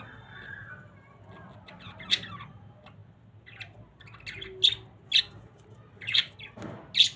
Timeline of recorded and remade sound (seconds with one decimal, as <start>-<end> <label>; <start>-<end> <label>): 0.0-7.2 recorded